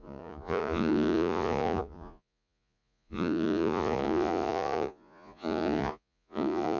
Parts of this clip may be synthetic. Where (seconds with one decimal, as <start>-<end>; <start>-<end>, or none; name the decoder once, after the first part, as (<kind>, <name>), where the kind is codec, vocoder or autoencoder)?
0.0-6.8 (vocoder, Vocos)